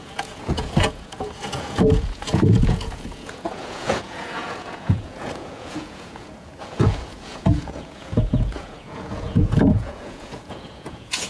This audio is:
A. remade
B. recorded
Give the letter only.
A